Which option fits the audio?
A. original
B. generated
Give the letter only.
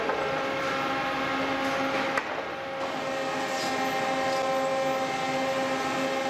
A